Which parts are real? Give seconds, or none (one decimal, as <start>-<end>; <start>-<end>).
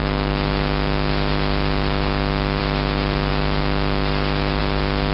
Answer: 0.0-5.1